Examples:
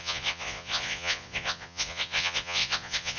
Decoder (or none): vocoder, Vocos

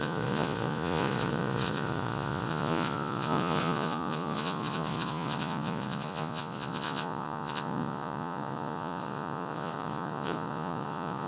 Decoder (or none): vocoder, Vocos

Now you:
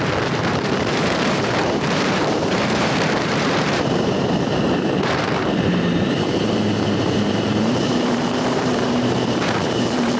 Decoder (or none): vocoder, BigVGAN v2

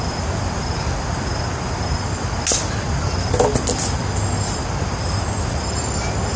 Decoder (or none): none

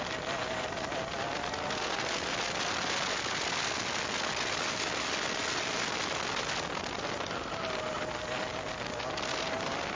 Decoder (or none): none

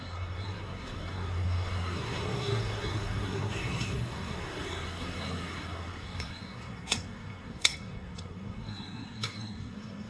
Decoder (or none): codec, SNAC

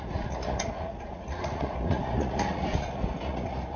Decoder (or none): vocoder, Vocos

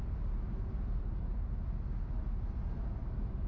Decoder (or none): none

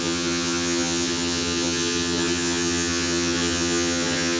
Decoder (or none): vocoder, HiFi-GAN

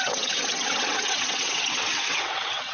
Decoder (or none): vocoder, WaveNeXt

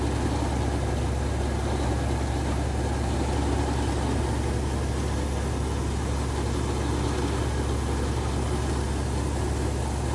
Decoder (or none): none